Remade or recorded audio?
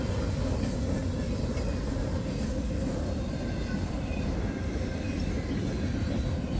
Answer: recorded